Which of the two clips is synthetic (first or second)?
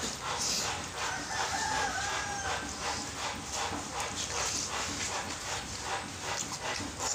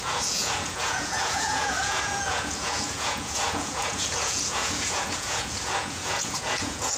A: second